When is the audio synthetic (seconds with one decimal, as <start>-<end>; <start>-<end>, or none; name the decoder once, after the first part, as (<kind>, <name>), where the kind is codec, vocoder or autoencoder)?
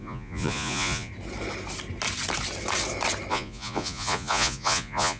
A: 0.0-1.1 (vocoder, Vocos); 3.3-5.2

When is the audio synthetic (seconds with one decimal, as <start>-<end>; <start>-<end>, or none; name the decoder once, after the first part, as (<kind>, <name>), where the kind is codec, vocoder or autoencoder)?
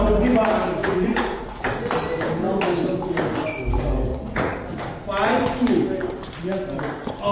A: 0.8-1.8 (vocoder, Vocos); 4.1-4.7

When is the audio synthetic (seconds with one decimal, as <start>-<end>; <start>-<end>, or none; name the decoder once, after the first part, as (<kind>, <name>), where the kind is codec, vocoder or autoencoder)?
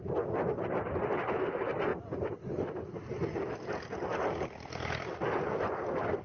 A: none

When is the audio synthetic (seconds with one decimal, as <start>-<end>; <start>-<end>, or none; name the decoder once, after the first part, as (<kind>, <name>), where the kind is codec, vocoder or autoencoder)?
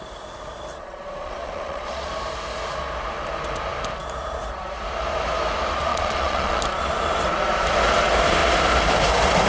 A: 0.7-2.1 (vocoder, Vocos); 5.9-6.6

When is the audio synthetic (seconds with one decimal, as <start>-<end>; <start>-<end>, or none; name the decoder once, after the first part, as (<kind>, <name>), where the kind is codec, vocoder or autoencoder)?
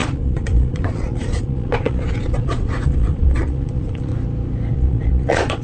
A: 0.0-4.1 (vocoder, Vocos); 4.7-5.6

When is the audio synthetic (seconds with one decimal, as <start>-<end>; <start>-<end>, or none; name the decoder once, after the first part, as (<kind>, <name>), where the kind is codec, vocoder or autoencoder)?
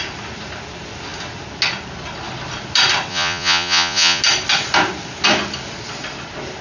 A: 3.1-4.2 (vocoder, Vocos)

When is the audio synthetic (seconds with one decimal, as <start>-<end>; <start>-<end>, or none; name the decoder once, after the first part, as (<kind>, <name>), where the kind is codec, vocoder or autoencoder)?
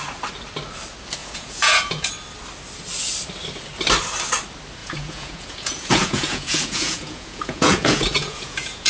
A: 1.2-2.1 (vocoder, Vocos); 4.8-8.9